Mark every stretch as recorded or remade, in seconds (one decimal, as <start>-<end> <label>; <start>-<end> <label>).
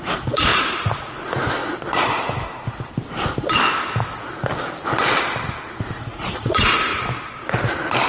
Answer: 0.0-1.6 remade; 1.6-6.0 recorded; 6.0-6.9 remade; 6.9-8.1 recorded